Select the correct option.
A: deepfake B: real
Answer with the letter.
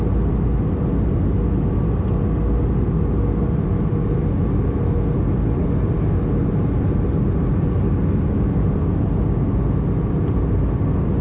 B